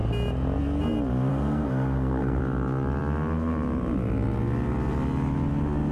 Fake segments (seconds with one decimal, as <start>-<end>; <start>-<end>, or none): 1.3-2.4